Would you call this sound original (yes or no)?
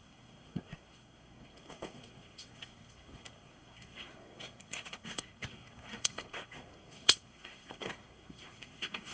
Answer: no